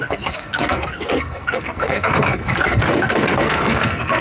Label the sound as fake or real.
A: fake